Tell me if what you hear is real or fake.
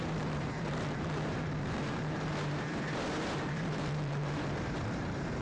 fake